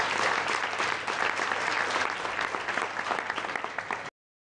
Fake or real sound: real